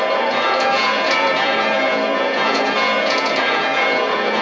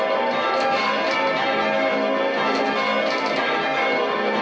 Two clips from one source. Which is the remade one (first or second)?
first